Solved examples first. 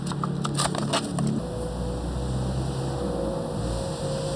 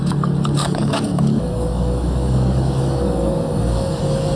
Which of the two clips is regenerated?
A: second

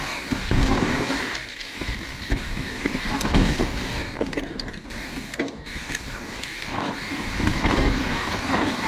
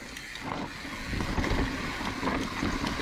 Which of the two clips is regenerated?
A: first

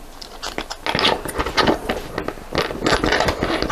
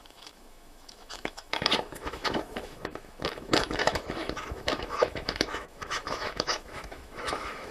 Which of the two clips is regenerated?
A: second